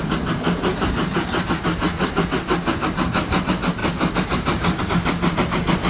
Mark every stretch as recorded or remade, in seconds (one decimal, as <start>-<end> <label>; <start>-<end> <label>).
0.0-0.7 recorded; 0.7-1.5 remade; 1.5-5.9 recorded